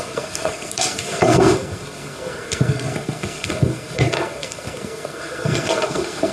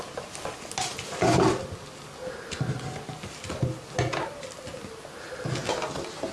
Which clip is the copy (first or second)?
first